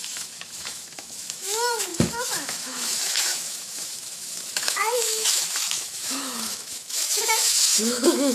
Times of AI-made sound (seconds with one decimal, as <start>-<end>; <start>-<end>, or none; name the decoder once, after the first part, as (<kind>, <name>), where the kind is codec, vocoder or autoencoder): 0.0-8.3 (autoencoder, DAC-VAE)